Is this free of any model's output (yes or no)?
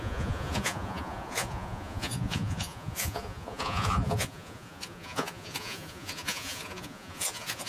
no